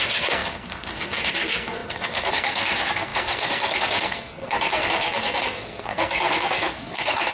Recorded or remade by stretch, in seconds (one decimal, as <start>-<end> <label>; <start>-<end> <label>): 0.0-7.3 remade